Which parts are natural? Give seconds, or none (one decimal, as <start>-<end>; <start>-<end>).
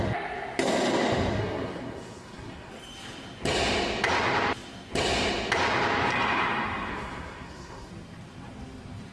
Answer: 0.0-1.4; 2.7-6.9; 7.9-9.1